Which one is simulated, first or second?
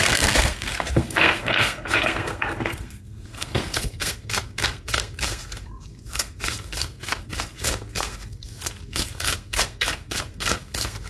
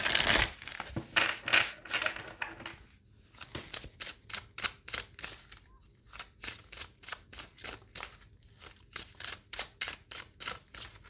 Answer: first